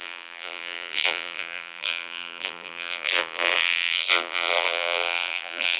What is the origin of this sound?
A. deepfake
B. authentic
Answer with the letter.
A